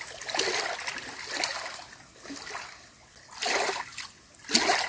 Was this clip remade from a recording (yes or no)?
no